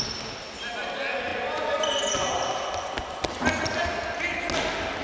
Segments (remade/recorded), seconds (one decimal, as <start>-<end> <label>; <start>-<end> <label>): 0.0-5.0 recorded